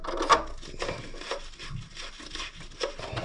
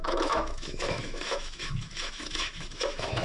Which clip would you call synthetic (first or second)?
second